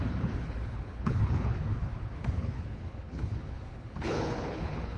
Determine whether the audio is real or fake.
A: fake